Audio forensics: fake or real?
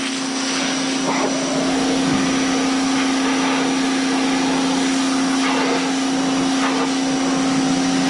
real